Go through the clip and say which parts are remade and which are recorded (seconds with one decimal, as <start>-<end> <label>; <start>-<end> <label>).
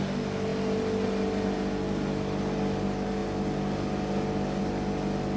0.0-5.4 recorded